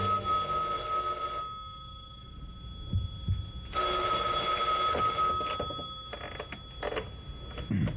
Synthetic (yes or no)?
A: no